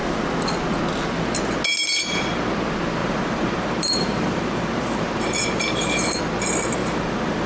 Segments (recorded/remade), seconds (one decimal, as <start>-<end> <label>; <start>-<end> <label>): 0.0-3.0 recorded; 3.0-6.2 remade; 6.2-6.8 recorded; 6.8-7.5 remade